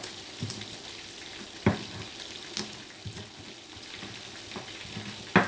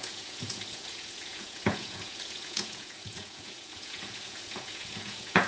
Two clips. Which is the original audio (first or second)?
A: first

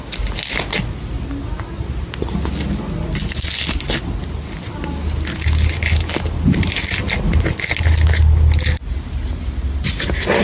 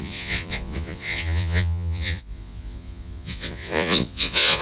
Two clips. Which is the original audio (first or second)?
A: first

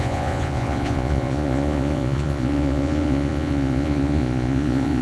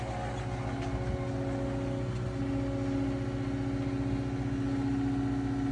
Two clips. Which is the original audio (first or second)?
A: second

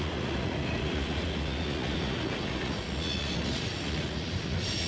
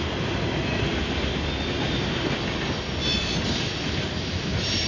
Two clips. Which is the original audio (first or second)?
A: second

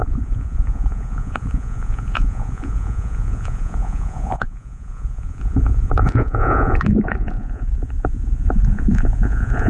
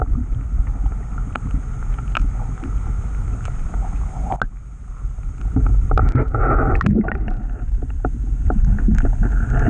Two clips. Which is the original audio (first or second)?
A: second